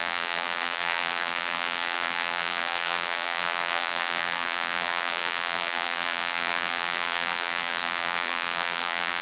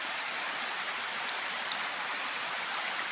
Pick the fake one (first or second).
first